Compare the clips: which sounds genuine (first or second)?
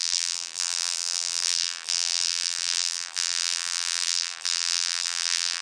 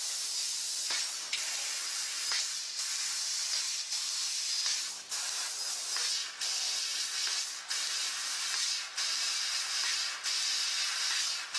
second